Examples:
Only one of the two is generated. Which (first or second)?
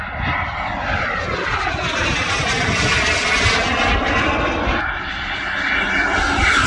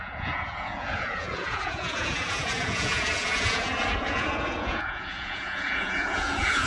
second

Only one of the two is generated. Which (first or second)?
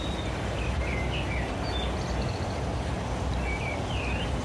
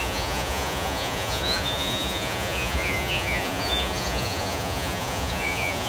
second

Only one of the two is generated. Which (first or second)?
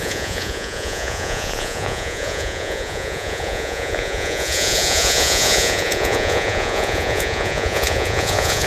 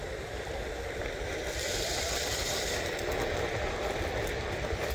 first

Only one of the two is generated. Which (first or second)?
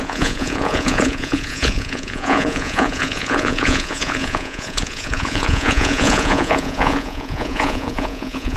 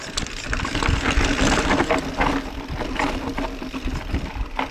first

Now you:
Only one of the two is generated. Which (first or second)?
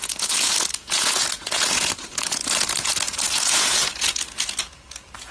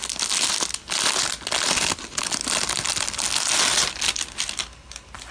first